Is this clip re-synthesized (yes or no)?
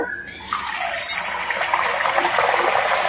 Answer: no